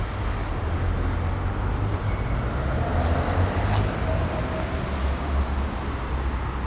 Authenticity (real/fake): real